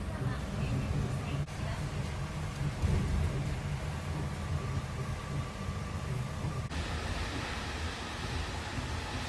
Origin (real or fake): real